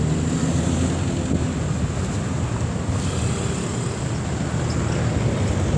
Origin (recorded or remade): recorded